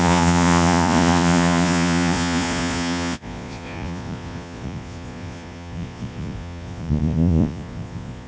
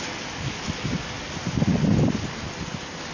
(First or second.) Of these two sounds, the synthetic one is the first